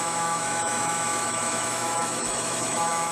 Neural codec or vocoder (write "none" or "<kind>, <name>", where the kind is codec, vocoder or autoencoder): autoencoder, DAC-VAE